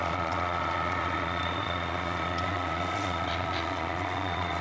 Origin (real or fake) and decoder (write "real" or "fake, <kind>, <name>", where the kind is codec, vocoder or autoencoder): fake, vocoder, Vocos